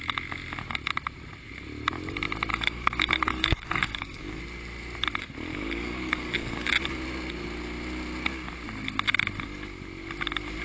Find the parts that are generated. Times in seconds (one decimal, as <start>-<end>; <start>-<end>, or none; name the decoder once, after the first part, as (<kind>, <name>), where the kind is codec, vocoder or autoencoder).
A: 2.5-4.4 (codec, DAC); 5.5-6.7